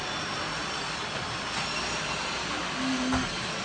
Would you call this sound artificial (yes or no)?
no